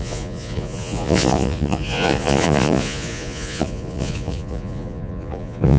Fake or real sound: fake